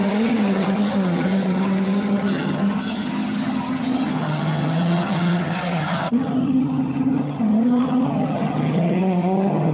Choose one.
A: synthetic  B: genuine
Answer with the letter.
A